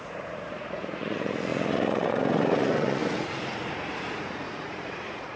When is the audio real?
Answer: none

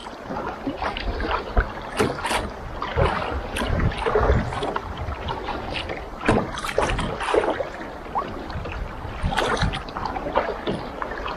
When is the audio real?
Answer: 0.7-6.1; 9.6-11.4